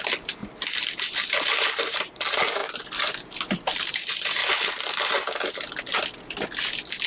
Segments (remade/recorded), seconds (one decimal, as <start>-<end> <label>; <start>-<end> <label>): 0.0-2.6 remade; 2.6-3.9 recorded; 3.9-4.4 remade; 4.4-7.1 recorded